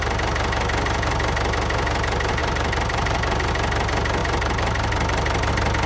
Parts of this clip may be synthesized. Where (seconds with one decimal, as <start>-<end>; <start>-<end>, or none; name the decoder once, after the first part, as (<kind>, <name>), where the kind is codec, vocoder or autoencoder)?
2.4-3.5 (vocoder, BigVGAN v2); 4.2-5.5